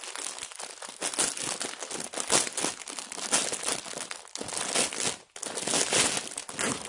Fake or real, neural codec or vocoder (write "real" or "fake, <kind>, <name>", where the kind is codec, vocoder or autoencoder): real